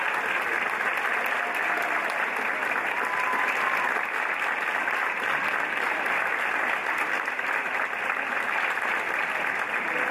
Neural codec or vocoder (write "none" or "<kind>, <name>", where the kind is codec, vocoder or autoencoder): none